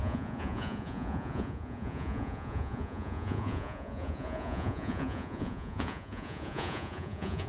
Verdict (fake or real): fake